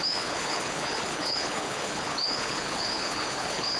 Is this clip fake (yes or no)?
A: yes